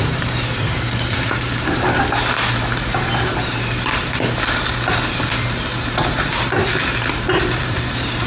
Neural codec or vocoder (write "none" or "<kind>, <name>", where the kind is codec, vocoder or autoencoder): vocoder, BigVGAN v2